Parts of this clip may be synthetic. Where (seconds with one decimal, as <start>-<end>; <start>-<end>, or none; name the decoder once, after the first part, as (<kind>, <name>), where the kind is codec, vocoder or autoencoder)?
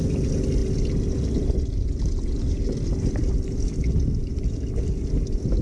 none